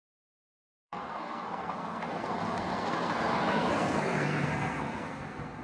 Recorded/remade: remade